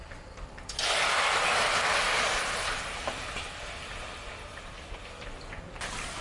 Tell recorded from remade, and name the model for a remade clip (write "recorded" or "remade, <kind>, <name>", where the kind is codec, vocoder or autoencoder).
recorded